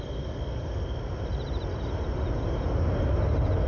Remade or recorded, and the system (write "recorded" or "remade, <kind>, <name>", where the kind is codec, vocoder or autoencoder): recorded